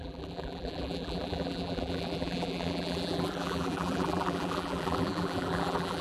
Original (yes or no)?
no